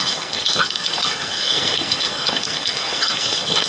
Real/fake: fake